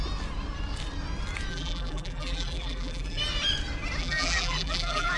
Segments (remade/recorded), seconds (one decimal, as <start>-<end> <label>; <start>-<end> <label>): 0.0-1.5 recorded; 1.5-3.2 remade; 3.2-4.0 recorded; 4.0-5.2 remade